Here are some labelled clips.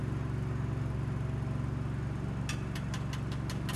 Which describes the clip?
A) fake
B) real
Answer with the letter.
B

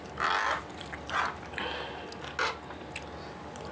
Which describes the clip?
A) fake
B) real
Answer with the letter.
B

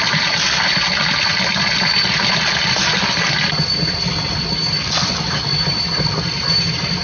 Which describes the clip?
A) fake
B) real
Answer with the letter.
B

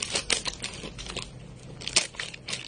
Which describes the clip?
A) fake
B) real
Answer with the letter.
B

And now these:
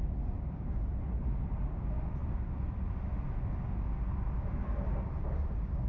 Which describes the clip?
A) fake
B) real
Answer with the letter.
B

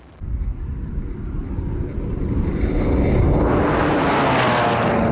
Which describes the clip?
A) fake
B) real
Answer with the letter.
B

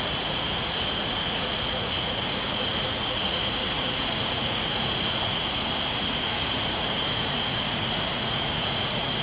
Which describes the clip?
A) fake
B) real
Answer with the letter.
A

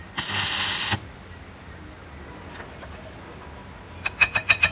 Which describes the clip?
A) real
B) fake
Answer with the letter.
A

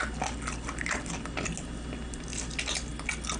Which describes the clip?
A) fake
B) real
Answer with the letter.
B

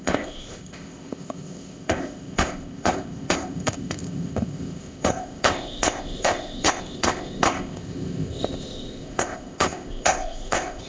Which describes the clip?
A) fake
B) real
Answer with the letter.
A